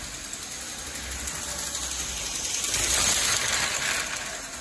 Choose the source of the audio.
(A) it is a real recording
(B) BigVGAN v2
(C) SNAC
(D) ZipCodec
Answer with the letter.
A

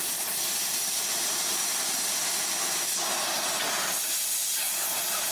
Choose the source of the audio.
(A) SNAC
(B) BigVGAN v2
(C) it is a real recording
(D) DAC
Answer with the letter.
C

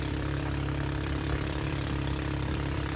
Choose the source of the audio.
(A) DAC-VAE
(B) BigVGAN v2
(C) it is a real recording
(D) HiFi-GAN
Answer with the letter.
B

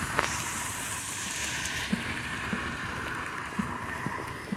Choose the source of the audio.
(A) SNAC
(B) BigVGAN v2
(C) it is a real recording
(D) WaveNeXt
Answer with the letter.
B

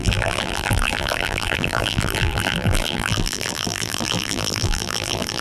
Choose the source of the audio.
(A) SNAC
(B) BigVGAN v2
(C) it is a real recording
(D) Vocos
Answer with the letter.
B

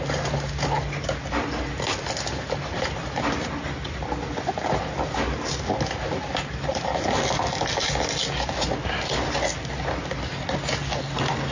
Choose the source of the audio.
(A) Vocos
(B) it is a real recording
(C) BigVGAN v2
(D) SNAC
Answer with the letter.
B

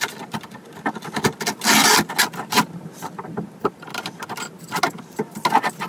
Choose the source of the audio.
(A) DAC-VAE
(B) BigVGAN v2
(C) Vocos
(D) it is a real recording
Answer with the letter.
D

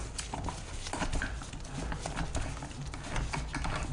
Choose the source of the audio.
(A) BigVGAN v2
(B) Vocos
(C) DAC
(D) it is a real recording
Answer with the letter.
D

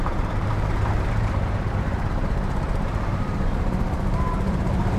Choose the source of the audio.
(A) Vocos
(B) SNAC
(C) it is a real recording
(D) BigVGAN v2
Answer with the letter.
D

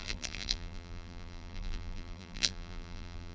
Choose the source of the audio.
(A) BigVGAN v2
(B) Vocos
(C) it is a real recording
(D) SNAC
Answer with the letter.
A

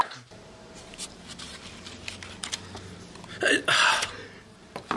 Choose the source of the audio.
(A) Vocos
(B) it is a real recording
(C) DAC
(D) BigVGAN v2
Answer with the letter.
D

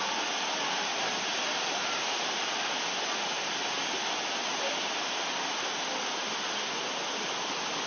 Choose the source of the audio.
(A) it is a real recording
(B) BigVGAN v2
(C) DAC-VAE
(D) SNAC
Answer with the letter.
A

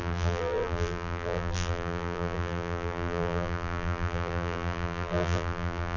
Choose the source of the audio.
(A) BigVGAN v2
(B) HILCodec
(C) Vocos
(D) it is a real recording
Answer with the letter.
A